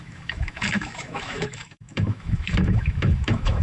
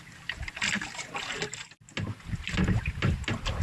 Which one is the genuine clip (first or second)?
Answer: second